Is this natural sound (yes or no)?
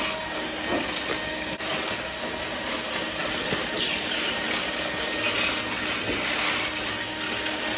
yes